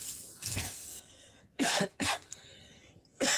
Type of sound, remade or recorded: remade